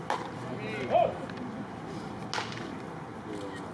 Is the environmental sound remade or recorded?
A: recorded